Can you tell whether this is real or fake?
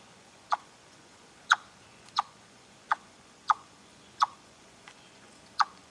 fake